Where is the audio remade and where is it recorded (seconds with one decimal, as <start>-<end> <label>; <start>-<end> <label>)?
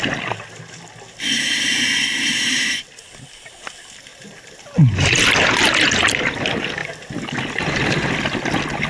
0.0-8.9 recorded